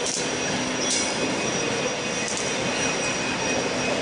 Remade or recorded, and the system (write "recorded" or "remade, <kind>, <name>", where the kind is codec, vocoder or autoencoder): recorded